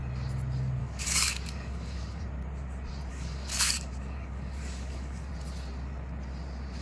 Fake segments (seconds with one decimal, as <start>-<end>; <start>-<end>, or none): 0.8-2.2; 3.1-5.3